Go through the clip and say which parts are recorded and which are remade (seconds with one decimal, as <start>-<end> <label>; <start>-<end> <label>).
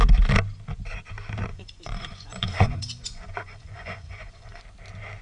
0.0-1.5 recorded; 1.5-4.6 remade; 4.6-5.2 recorded